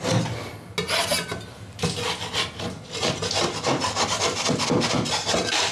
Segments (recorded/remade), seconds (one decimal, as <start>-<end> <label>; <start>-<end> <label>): 0.0-5.7 recorded